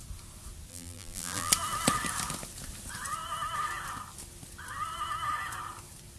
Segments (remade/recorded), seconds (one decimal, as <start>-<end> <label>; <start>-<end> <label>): 0.0-0.7 recorded; 0.7-1.5 remade; 1.5-6.2 recorded

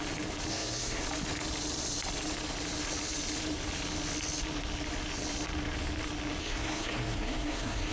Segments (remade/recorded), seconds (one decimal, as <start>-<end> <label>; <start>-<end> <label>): 0.0-0.5 recorded; 0.5-1.0 remade; 1.0-6.4 recorded; 6.4-7.9 remade

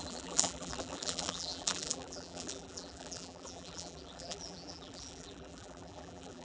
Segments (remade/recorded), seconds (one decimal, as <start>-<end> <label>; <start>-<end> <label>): 0.0-6.4 remade